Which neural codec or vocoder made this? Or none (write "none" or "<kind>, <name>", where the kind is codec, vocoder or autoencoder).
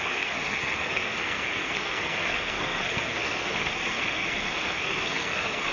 codec, SNAC